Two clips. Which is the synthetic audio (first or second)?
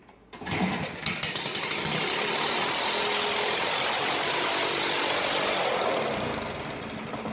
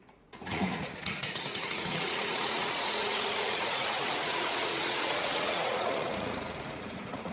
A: second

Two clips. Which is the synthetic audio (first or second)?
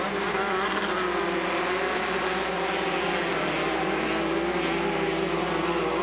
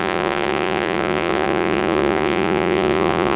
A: second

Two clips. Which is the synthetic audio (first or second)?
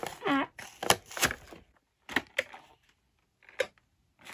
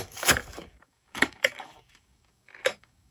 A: second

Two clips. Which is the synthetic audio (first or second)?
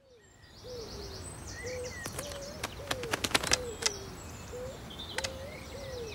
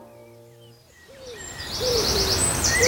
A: second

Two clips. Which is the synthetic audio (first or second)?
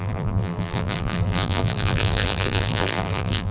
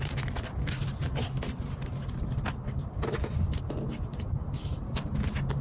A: first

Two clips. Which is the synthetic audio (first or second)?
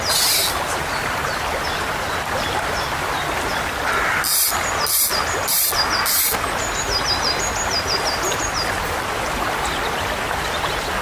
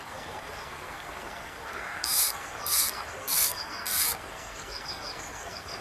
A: second